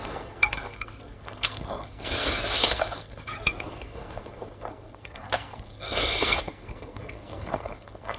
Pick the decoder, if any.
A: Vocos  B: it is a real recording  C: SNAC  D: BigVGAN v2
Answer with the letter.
C